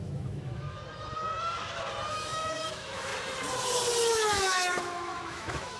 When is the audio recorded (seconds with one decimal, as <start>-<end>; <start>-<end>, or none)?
0.8-2.1; 3.1-4.1

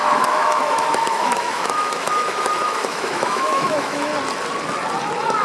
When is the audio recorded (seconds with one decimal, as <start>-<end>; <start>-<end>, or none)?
4.1-5.4